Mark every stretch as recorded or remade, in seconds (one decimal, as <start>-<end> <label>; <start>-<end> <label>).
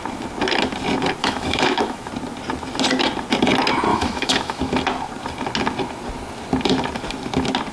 0.0-1.2 recorded; 1.2-2.1 remade; 2.1-3.9 recorded; 3.9-4.6 remade; 4.6-7.7 recorded